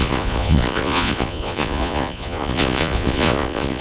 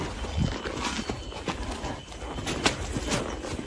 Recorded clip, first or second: second